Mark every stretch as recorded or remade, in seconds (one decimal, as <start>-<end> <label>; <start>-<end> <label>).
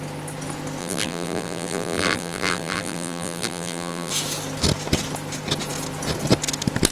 0.0-0.8 recorded; 0.8-4.1 remade; 4.1-6.9 recorded